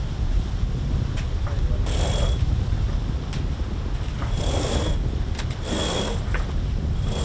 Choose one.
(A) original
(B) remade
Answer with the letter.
A